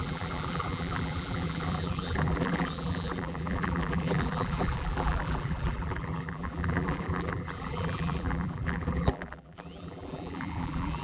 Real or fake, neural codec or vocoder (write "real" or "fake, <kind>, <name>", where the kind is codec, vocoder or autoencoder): fake, vocoder, BigVGAN v2